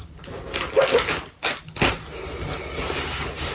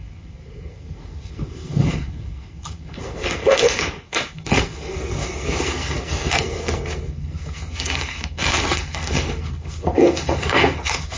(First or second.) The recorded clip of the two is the first